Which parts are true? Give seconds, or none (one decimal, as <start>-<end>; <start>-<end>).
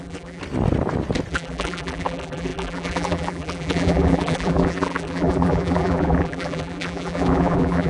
0.4-1.3